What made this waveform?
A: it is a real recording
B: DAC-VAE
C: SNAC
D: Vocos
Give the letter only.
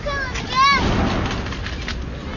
A